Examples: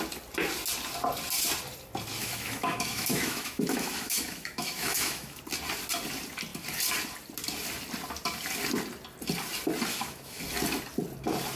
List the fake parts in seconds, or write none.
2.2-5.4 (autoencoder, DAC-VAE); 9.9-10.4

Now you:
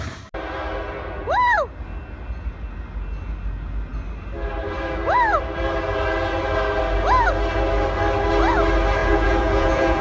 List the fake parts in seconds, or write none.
9.0-10.0 (vocoder, Vocos)

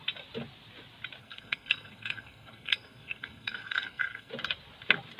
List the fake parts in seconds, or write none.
1.2-4.3 (codec, SNAC)

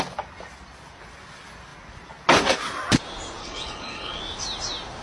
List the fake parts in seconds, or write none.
3.4-4.2 (codec, HILCodec)

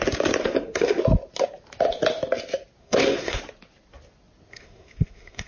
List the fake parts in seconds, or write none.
0.4-1.0 (codec, SNAC); 2.8-3.4; 4.5-5.5

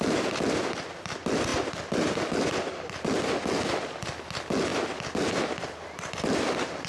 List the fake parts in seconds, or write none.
none

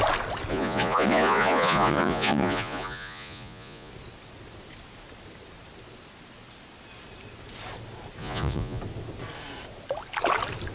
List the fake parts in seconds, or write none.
0.5-3.9 (vocoder, Vocos); 8.2-8.8

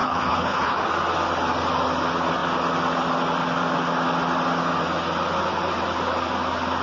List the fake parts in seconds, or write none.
0.0-0.9 (codec, HILCodec)